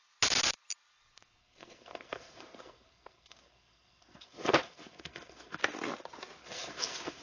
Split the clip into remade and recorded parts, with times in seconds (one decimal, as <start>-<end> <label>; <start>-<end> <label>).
0.0-1.4 recorded; 1.4-5.6 remade; 5.6-6.4 recorded; 6.4-7.2 remade